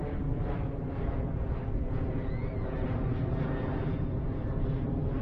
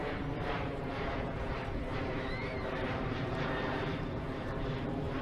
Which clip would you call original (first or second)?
first